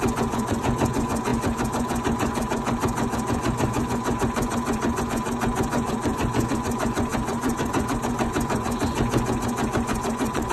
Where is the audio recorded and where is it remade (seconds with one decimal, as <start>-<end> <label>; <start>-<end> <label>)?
0.0-10.5 remade